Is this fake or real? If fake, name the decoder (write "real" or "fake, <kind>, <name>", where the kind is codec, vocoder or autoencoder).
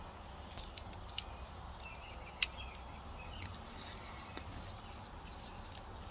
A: real